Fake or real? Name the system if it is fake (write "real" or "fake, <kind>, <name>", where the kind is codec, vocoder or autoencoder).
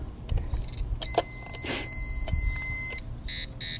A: real